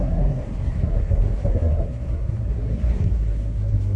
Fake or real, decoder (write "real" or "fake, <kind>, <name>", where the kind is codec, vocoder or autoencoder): fake, codec, SNAC